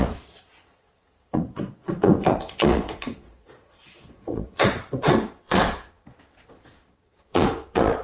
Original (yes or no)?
no